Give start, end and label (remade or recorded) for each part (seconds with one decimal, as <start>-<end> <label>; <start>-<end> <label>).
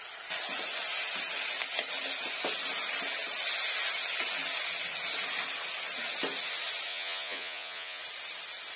0.0-6.9 recorded; 6.9-8.0 remade; 8.0-8.8 recorded